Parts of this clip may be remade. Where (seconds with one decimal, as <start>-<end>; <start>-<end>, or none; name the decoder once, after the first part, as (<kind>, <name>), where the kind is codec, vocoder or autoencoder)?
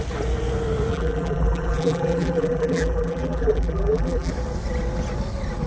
0.9-4.3 (vocoder, BigVGAN v2)